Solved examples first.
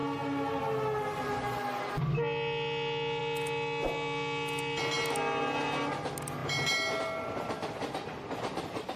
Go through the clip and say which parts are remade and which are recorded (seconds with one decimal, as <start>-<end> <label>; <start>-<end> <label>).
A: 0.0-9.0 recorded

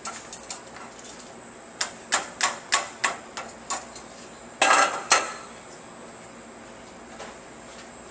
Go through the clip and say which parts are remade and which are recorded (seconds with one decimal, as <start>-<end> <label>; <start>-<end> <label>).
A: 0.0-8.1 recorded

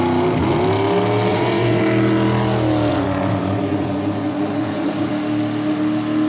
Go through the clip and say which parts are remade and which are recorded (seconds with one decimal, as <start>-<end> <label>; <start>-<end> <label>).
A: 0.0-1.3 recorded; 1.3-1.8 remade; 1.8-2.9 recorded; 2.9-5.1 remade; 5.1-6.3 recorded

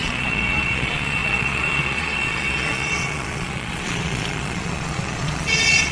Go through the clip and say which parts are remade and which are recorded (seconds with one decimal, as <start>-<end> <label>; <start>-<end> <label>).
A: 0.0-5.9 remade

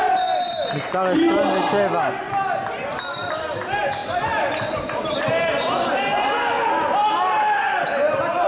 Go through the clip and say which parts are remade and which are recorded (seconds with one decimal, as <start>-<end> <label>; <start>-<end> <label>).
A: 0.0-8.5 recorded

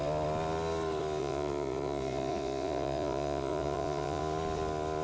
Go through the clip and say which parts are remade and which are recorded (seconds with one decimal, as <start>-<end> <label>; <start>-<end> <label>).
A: 0.0-1.2 recorded; 1.2-4.2 remade; 4.2-5.0 recorded